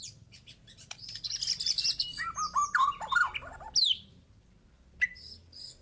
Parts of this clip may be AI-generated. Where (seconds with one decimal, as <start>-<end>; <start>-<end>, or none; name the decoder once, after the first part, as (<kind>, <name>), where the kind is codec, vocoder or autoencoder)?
none